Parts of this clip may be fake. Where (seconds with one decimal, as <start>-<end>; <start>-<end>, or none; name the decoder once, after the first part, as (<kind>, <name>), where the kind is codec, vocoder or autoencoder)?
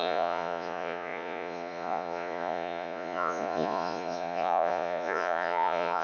0.0-6.0 (vocoder, Vocos)